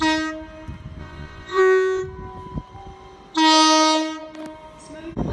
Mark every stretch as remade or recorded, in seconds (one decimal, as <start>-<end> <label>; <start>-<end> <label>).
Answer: 0.0-1.0 recorded; 1.0-2.0 remade; 2.0-5.3 recorded